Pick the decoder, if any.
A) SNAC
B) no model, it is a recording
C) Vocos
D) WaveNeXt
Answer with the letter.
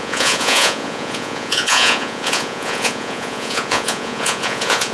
C